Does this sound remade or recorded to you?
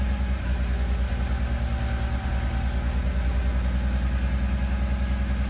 recorded